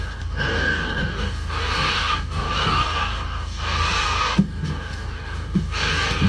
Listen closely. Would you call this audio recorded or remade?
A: remade